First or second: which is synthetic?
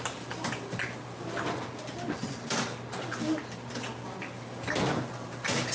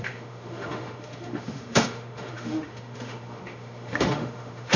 second